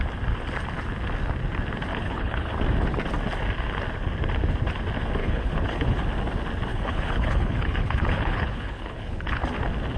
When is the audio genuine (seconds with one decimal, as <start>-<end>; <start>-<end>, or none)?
0.0-1.9; 2.5-5.2; 6.0-6.7; 9.4-10.0